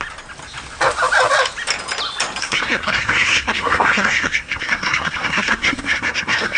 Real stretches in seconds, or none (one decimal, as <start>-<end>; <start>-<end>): 0.0-2.4